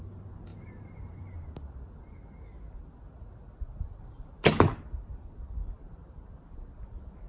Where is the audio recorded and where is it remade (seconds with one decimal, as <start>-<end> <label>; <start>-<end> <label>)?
0.0-0.5 recorded; 0.5-1.5 remade; 1.5-7.3 recorded